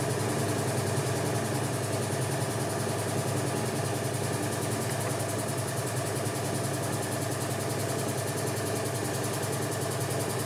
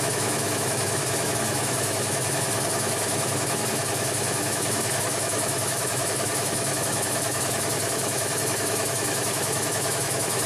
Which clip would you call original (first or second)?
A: first